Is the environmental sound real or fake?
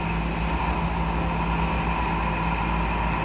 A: real